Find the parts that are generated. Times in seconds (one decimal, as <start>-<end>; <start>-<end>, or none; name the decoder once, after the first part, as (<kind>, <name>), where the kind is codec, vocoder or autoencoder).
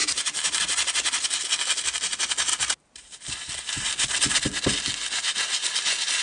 0.0-0.6 (vocoder, BigVGAN v2); 2.5-3.9